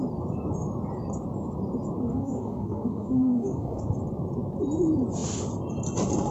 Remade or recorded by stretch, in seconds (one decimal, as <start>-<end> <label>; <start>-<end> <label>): 0.0-2.1 recorded; 2.1-3.8 remade; 3.8-6.3 recorded